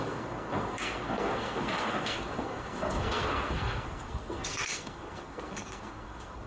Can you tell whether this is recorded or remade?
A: remade